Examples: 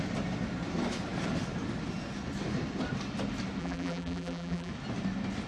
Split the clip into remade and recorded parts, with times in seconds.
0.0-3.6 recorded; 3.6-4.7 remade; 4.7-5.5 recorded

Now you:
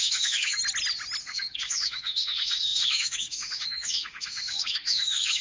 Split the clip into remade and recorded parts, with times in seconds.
0.0-0.6 remade; 0.6-1.2 recorded; 1.2-5.4 remade